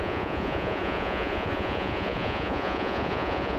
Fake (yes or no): yes